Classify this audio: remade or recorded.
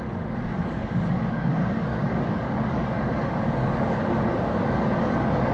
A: remade